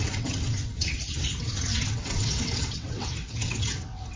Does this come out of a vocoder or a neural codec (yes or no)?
yes